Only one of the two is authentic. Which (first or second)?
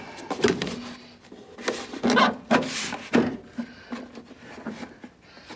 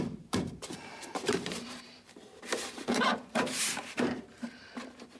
first